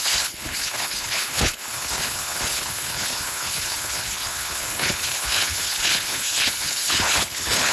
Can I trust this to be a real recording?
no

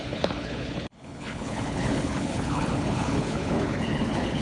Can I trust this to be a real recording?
no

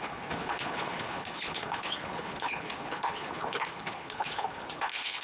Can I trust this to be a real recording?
no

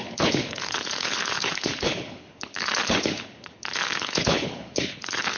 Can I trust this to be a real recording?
no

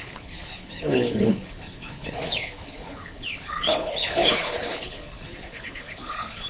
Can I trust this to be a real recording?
no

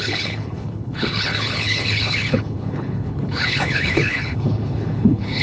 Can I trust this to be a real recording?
no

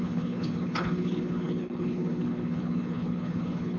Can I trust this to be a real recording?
no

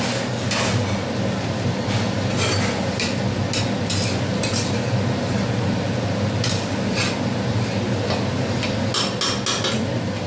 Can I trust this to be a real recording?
yes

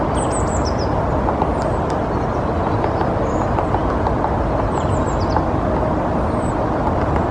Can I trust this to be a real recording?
yes